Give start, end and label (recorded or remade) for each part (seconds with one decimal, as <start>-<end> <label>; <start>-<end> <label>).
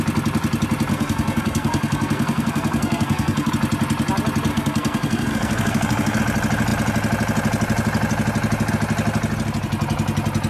0.0-0.9 recorded; 0.9-3.5 remade; 3.5-4.5 recorded; 4.5-6.2 remade; 6.2-10.5 recorded